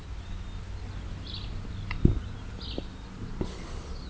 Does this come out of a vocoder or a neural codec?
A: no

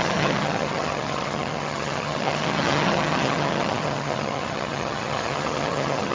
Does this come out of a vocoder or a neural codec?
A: yes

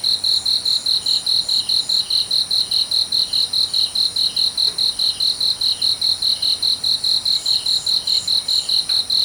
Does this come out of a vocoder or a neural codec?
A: no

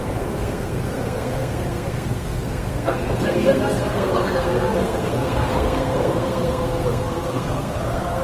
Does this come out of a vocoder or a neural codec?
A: yes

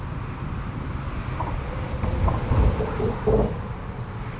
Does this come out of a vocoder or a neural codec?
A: no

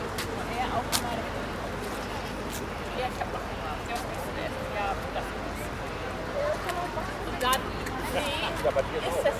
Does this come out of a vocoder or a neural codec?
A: no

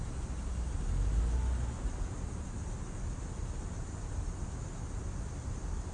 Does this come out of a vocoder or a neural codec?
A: no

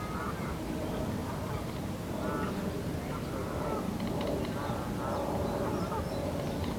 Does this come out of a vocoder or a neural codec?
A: no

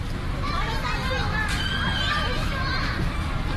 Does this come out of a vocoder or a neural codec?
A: no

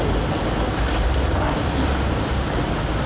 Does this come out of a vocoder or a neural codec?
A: no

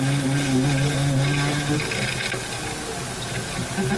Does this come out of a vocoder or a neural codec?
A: no